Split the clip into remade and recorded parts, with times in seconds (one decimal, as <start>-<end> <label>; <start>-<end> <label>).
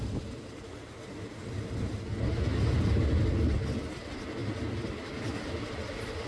0.0-6.3 recorded